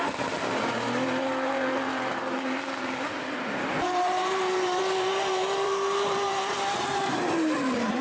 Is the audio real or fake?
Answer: fake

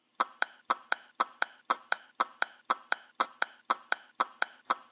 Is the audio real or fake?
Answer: fake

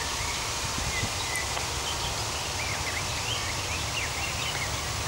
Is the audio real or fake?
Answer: real